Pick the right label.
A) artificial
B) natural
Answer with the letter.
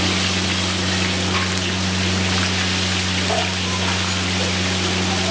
B